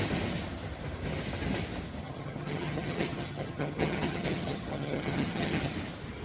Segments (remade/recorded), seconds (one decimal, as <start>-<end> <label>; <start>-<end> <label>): 0.0-2.0 recorded; 2.0-5.7 remade; 5.7-6.2 recorded